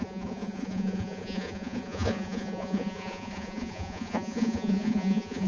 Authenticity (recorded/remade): remade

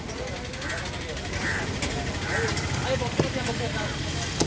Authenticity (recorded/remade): recorded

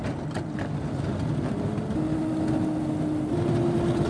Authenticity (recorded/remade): recorded